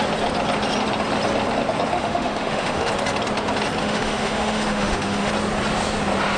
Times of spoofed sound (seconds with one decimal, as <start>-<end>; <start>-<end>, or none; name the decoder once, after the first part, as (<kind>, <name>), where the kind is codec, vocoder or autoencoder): 1.9-2.9 (autoencoder, DAC-VAE); 3.8-5.3